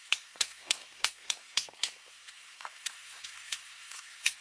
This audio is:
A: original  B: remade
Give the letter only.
B